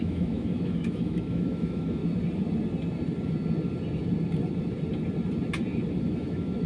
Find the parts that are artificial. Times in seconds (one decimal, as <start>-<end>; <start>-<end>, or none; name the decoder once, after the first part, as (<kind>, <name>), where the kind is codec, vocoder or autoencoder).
0.0-2.0 (autoencoder, DAC-VAE); 6.0-6.7